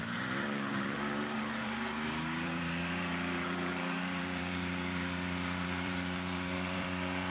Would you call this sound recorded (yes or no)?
no